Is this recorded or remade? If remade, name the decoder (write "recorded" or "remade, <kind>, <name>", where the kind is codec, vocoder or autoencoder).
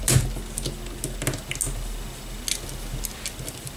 recorded